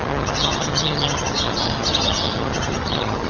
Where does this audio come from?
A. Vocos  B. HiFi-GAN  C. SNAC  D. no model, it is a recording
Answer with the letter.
B